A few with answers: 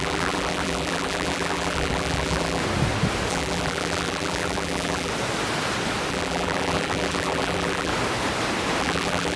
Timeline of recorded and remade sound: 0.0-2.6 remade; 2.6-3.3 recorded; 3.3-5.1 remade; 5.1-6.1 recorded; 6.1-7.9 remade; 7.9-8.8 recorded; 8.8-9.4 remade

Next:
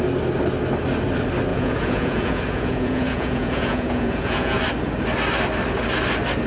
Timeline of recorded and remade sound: 0.0-1.5 recorded; 1.5-4.6 remade; 4.6-6.5 recorded

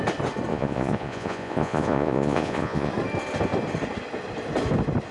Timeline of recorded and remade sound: 0.0-0.5 recorded; 0.5-2.9 remade; 2.9-5.1 recorded

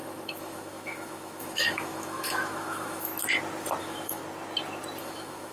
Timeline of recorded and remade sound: 0.0-3.1 remade; 3.1-3.8 recorded; 3.8-4.2 remade; 4.2-5.0 recorded; 5.0-5.5 remade

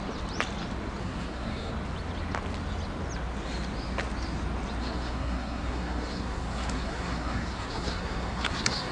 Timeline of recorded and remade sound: 0.0-1.0 recorded; 1.0-1.7 remade; 1.7-4.8 recorded; 4.8-8.9 remade

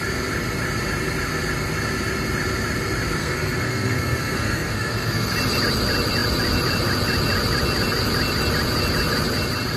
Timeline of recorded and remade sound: 0.0-3.2 recorded; 3.2-5.3 remade; 5.3-9.8 recorded